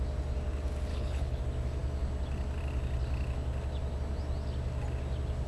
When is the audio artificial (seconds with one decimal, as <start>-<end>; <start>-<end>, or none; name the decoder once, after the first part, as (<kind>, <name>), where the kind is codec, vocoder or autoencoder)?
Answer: 0.9-1.4 (codec, HILCodec)